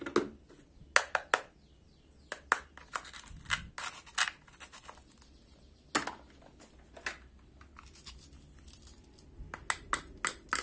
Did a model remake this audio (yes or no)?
no